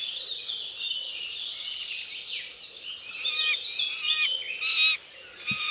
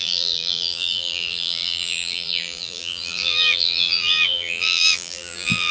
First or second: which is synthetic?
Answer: second